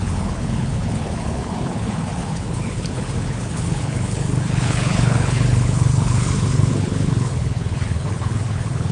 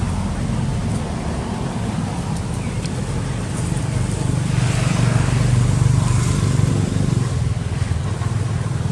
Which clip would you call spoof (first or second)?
first